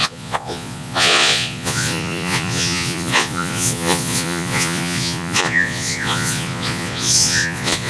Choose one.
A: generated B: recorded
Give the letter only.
A